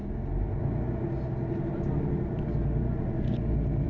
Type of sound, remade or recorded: recorded